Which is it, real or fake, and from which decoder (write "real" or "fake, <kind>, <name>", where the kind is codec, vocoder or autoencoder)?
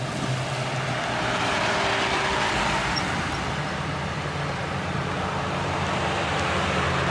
real